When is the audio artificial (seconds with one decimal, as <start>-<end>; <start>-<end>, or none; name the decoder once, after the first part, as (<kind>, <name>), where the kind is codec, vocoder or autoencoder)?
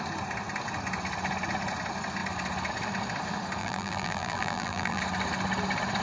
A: 3.6-5.0 (vocoder, BigVGAN v2)